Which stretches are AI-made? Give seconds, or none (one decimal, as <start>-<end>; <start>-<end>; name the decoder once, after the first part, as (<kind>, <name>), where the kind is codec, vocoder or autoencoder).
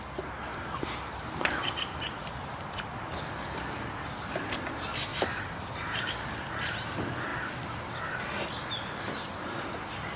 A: 0.5-2.7 (vocoder, BigVGAN v2); 5.1-6.1